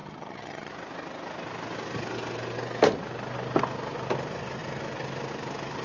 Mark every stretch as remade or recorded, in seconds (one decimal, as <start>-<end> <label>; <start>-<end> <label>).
0.0-0.7 remade; 0.7-5.8 recorded